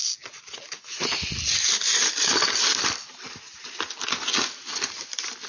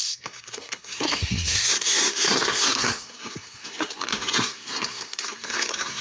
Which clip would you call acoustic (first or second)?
first